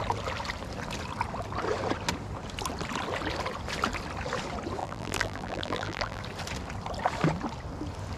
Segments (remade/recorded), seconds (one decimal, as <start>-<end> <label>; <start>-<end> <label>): 0.0-4.8 recorded; 4.8-6.2 remade; 6.2-8.2 recorded